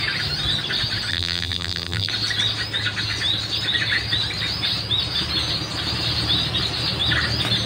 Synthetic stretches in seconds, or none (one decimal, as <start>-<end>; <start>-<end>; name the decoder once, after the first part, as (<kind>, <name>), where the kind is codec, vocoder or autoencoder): 1.1-2.1 (vocoder, BigVGAN v2)